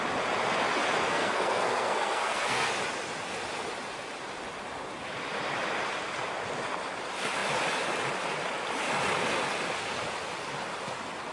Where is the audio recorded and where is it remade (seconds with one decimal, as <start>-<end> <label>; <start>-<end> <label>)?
0.0-1.0 recorded; 1.0-2.7 remade; 2.7-11.3 recorded